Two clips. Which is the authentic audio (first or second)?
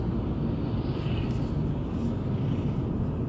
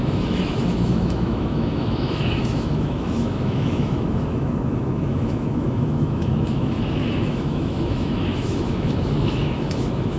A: first